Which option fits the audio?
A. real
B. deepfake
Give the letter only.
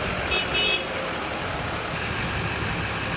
A